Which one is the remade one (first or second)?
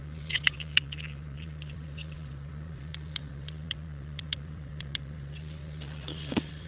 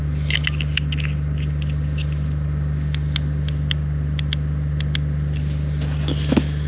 first